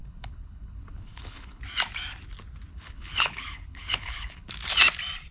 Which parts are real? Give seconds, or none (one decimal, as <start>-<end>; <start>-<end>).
1.6-2.7; 4.5-5.3